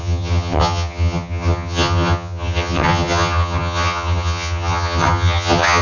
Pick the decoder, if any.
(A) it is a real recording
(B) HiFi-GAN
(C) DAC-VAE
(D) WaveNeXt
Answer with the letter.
B